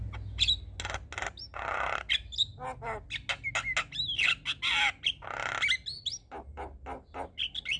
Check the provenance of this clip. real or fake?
real